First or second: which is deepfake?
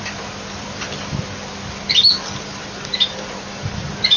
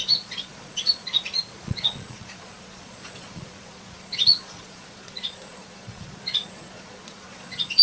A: second